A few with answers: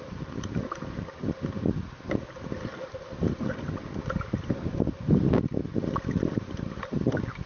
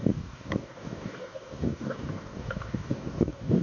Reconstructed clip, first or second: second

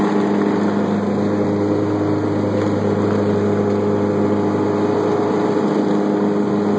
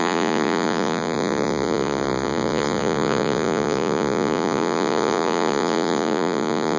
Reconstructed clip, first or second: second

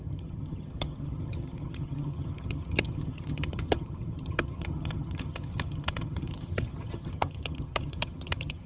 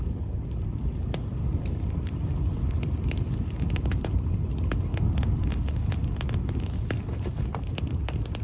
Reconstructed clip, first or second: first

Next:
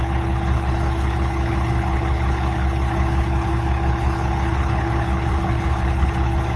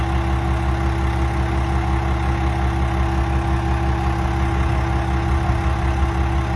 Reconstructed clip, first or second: first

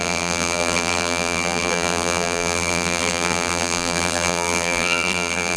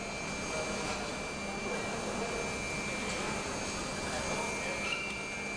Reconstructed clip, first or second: first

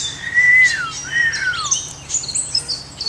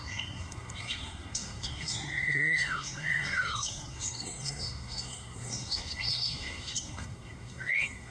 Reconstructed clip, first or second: second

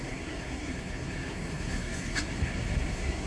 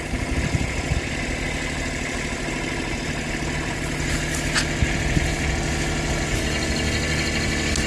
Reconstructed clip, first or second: first